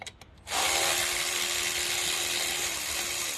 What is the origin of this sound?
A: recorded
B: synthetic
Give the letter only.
A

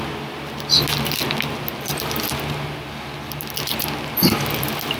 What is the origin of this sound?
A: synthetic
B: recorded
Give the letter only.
B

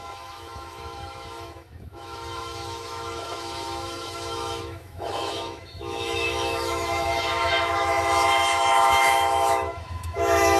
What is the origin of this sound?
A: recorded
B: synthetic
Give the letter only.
B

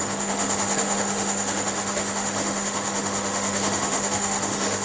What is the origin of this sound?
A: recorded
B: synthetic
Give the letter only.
B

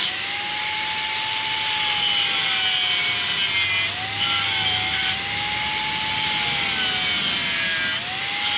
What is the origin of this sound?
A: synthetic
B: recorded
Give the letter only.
B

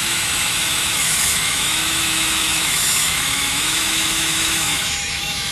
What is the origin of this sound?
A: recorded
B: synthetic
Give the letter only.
B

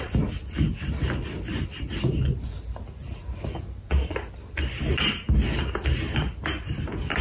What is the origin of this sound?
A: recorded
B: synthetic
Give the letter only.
A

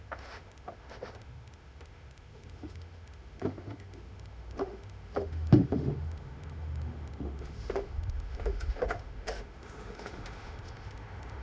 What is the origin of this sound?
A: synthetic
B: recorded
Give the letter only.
A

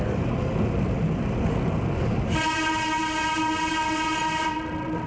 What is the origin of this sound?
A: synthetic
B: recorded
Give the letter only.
B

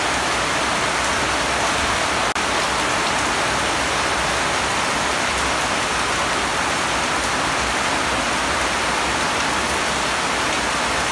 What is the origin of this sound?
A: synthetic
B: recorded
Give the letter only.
B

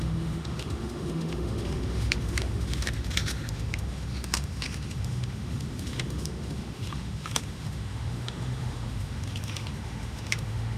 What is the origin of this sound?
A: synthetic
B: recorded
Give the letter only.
A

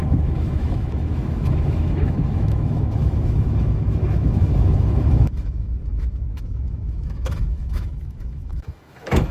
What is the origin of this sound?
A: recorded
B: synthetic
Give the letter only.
B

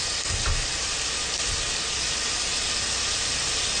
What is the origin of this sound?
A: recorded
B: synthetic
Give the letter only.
A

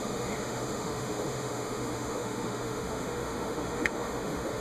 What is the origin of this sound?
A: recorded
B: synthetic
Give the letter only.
B